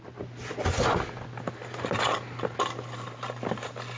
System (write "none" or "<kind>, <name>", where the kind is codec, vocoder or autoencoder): none